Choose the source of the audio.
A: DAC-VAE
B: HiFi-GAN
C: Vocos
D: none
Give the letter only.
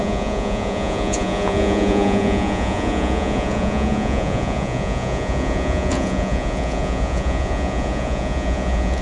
C